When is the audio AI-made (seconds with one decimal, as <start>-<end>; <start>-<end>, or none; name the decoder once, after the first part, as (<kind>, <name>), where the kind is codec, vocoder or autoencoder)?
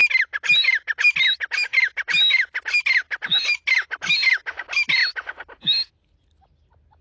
none